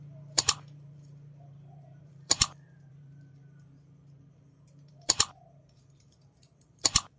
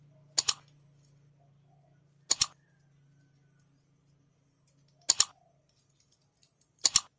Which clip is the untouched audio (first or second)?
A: second